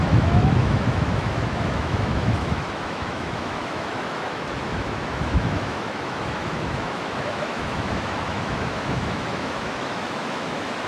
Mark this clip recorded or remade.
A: remade